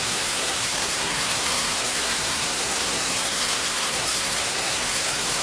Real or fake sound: fake